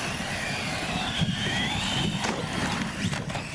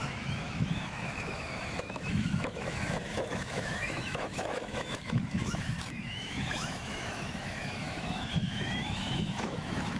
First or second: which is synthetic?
second